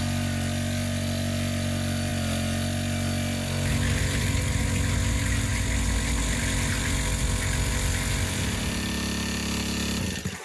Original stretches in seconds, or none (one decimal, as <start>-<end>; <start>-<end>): 0.0-10.4